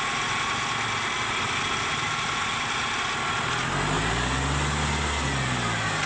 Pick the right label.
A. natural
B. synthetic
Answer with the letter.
A